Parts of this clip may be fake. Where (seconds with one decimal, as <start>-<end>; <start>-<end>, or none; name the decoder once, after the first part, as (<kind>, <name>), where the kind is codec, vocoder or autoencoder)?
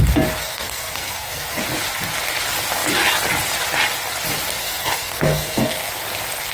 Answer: 0.4-1.6 (codec, SNAC); 4.6-5.9